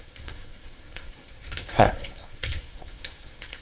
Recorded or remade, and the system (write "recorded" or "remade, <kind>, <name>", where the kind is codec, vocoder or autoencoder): remade, codec, SNAC